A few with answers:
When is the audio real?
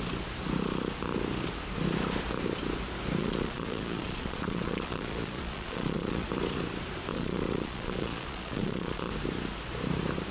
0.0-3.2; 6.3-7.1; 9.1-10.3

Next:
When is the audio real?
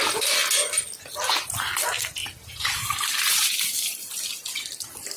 0.0-2.2; 3.2-5.2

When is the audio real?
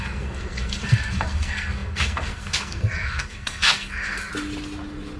4.3-5.2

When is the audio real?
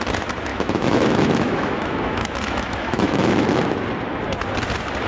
0.0-0.5; 3.6-5.1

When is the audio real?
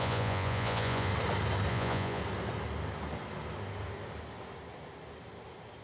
1.1-1.7; 2.2-5.8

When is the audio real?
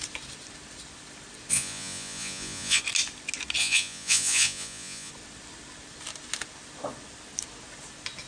0.0-1.5; 2.8-3.6; 5.1-8.3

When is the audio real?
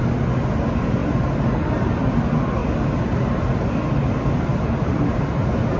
0.0-1.0; 1.9-4.5